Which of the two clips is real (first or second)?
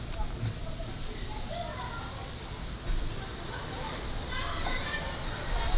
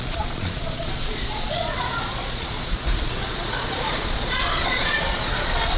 first